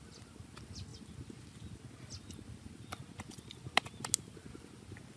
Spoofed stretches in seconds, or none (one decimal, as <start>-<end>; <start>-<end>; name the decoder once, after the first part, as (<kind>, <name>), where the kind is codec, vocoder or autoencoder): none